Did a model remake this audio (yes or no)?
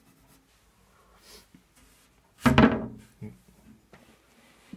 no